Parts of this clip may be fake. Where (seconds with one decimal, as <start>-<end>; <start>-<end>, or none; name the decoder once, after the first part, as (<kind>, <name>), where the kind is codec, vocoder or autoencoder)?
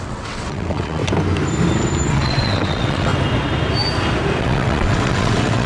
0.0-1.0 (vocoder, WaveNeXt); 2.1-3.1; 4.4-5.7